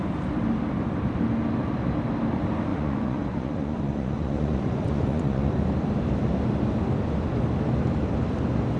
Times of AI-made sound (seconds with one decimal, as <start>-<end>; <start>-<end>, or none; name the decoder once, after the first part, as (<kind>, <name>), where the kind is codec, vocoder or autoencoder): 2.7-5.5 (vocoder, Vocos)